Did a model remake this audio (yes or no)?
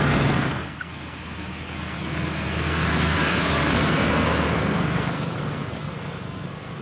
yes